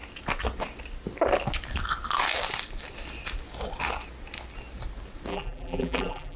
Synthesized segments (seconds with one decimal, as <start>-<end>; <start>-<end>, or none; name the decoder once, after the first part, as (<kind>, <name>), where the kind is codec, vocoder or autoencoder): 5.3-6.4 (vocoder, BigVGAN v2)

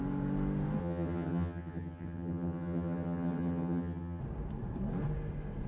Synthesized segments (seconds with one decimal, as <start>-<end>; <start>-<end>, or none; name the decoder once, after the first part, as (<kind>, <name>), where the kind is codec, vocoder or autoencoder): 0.8-4.2 (vocoder, HiFi-GAN)

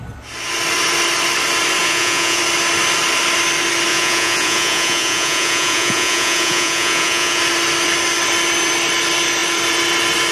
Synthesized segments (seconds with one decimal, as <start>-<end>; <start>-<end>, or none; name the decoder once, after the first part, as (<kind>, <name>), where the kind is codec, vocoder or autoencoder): 1.8-2.4 (vocoder, Vocos); 3.9-7.4

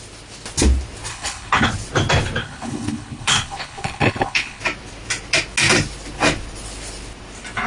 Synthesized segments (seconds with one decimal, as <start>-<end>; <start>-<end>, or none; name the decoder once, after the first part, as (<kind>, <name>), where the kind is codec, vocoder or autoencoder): 1.1-1.7 (codec, HILCodec); 2.4-4.6

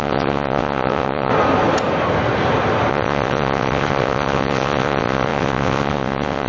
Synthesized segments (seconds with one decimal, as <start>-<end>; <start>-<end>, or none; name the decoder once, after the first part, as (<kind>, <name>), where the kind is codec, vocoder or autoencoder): 0.0-1.3 (vocoder, WaveNeXt); 2.9-6.5

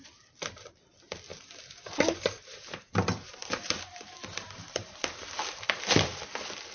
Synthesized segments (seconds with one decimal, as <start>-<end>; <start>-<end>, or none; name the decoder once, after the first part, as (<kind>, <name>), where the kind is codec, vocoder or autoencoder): 1.3-5.3 (vocoder, BigVGAN v2)

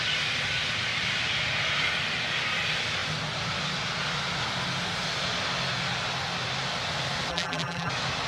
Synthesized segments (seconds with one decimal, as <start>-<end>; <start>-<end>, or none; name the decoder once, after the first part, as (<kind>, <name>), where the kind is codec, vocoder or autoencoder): 7.3-7.9 (vocoder, BigVGAN v2)